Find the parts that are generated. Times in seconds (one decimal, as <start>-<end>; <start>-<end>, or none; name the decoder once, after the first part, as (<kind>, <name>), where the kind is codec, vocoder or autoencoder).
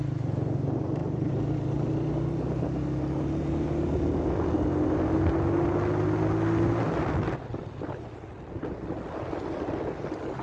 none